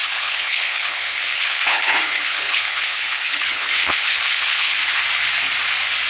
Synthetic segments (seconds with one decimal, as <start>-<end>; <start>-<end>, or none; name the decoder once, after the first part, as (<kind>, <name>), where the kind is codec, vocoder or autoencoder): 0.0-5.0 (codec, HILCodec)

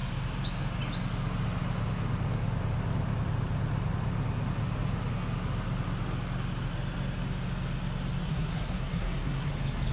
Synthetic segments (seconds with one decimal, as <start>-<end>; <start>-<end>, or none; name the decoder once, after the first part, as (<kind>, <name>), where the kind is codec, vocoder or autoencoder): 8.2-9.5 (codec, SNAC)